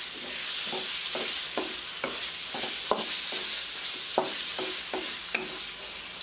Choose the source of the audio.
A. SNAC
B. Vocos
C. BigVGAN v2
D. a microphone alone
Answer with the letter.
D